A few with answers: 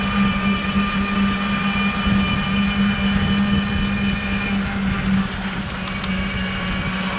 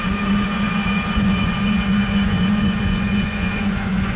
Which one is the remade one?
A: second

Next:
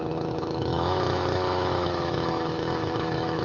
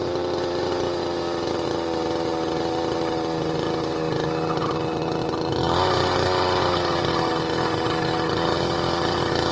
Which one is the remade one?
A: first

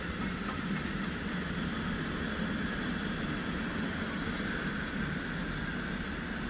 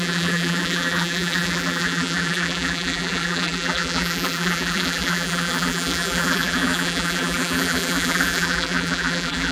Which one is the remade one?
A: second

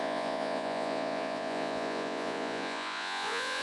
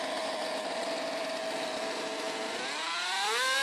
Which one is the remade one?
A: first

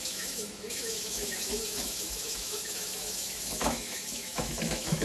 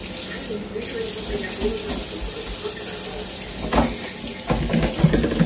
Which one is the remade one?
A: first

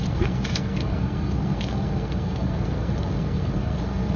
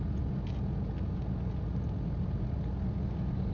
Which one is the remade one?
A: first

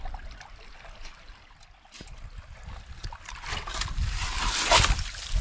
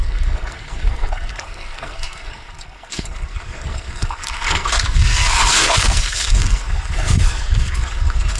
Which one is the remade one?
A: second